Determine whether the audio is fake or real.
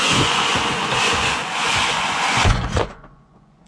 fake